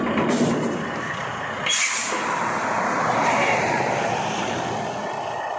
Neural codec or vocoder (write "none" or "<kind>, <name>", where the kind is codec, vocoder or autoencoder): vocoder, BigVGAN v2